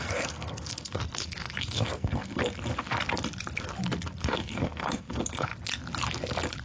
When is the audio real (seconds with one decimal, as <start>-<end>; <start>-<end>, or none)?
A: 1.0-1.6; 2.4-4.2; 5.5-6.6